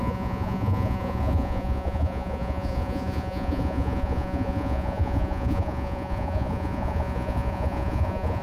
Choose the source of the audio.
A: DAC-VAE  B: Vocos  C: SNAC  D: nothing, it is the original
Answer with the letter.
B